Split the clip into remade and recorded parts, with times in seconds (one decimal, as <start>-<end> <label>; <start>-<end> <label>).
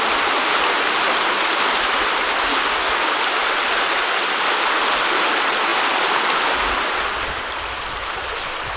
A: 0.0-2.5 recorded; 2.5-3.2 remade; 3.2-8.8 recorded